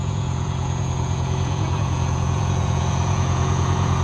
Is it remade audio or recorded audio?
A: remade